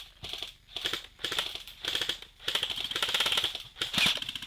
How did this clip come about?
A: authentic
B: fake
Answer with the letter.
A